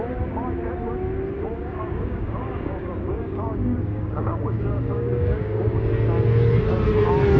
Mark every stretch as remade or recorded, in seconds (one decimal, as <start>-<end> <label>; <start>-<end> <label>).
0.0-1.6 recorded; 1.6-5.9 remade; 5.9-7.4 recorded